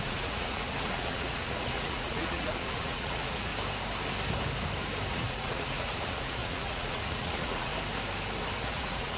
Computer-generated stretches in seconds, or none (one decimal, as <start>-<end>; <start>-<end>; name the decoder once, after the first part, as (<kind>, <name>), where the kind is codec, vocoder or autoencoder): 0.0-3.5 (vocoder, Vocos); 5.1-7.7; 8.6-9.2